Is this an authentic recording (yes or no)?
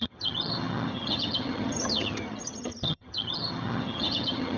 no